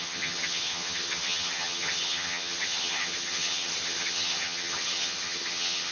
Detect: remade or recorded remade